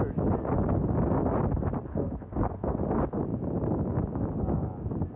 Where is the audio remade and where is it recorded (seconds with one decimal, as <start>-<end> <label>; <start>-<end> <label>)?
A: 0.0-1.9 recorded; 1.9-2.8 remade; 2.8-5.2 recorded